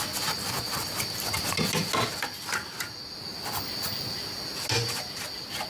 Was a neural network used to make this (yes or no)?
no